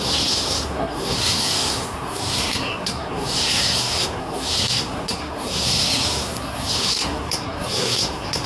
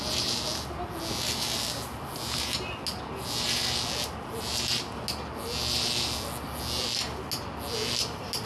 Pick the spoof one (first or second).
first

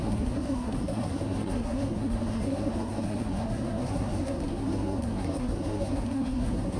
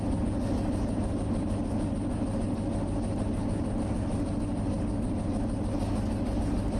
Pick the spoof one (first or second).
first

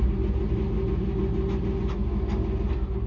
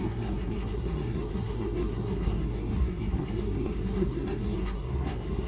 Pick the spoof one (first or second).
second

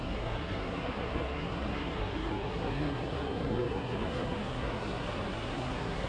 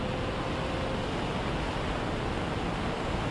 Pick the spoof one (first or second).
first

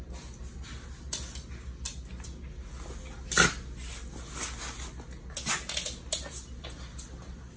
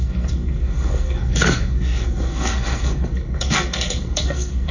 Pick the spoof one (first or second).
second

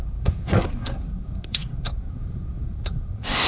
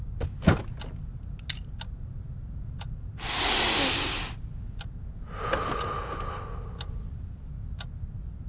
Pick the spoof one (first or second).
first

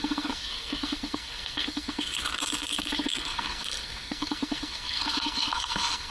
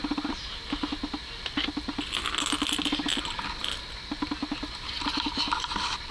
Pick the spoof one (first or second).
first